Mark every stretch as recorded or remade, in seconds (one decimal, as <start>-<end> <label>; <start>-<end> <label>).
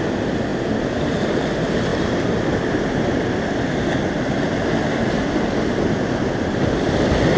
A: 0.0-7.4 recorded